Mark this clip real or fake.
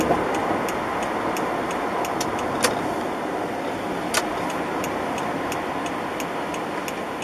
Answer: real